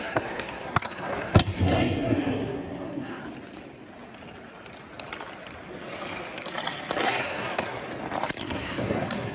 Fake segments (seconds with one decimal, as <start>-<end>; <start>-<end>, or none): 0.0-3.2; 7.0-7.8; 8.4-9.3